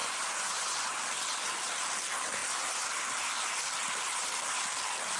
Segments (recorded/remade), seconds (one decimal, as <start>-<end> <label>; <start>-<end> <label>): 0.0-1.0 remade; 1.0-5.2 recorded